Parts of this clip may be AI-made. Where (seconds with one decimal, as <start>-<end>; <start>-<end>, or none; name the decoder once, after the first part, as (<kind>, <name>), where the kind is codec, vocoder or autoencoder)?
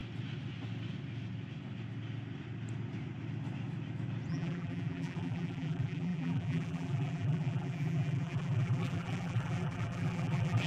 4.3-10.7 (vocoder, BigVGAN v2)